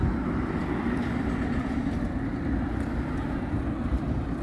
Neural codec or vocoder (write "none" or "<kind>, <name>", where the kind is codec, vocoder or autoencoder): none